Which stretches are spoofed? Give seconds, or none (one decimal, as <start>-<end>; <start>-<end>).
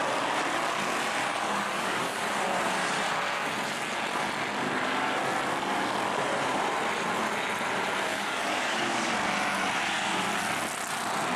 1.2-2.3; 8.1-9.1